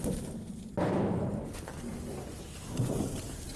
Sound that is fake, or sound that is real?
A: real